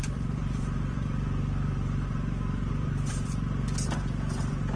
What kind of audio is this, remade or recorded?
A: remade